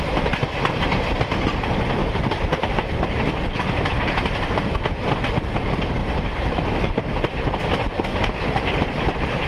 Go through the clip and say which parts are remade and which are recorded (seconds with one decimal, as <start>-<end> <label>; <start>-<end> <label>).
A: 0.0-2.0 recorded; 2.0-3.0 remade; 3.0-6.0 recorded; 6.0-7.3 remade; 7.3-8.1 recorded; 8.1-9.5 remade